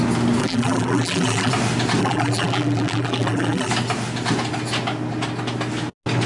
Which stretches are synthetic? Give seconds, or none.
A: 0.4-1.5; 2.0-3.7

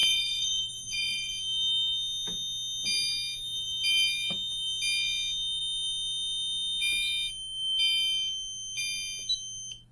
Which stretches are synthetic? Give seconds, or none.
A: 0.0-1.3

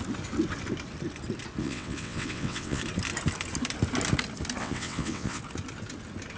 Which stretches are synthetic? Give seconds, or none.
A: 1.6-2.8; 4.6-5.4

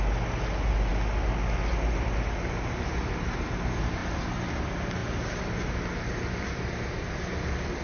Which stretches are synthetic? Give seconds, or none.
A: none